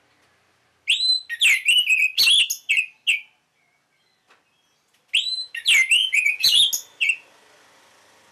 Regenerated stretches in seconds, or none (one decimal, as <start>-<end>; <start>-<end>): 6.0-6.6